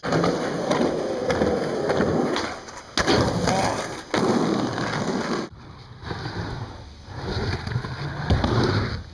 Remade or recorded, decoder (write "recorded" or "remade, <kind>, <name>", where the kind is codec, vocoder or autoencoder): recorded